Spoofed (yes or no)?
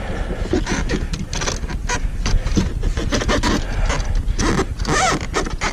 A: no